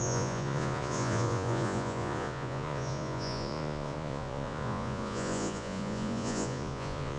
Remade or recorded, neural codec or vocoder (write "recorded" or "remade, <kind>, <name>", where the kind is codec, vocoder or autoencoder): remade, vocoder, Vocos